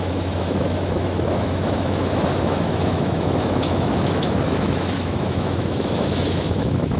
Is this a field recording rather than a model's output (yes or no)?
no